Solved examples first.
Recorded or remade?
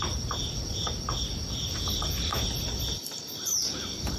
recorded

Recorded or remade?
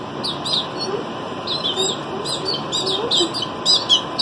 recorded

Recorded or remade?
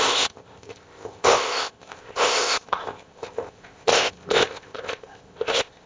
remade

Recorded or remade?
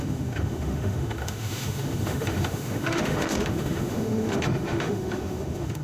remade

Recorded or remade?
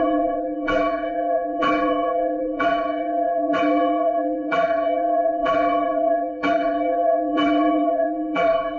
remade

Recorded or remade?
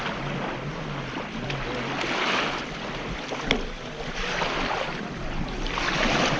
recorded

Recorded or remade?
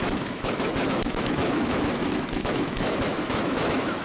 remade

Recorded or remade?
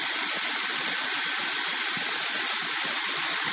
recorded